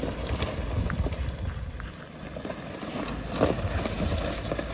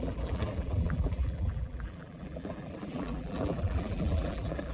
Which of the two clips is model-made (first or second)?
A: second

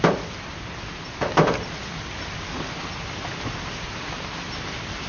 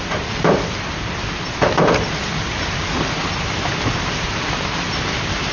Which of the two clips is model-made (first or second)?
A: second